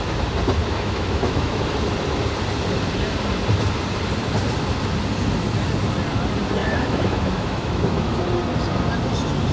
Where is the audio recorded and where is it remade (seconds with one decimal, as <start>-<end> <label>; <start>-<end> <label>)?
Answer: 0.0-0.6 recorded; 0.6-1.6 remade; 1.6-6.6 recorded; 6.6-8.2 remade; 8.2-9.5 recorded